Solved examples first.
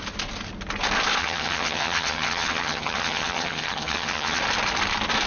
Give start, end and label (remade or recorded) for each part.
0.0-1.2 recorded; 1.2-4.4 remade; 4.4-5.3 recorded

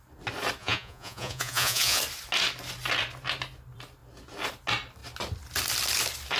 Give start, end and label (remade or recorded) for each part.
0.0-0.6 recorded; 0.6-2.0 remade; 2.0-6.4 recorded

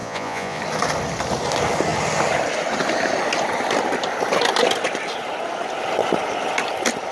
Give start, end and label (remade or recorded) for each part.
0.0-0.6 remade; 0.6-7.1 recorded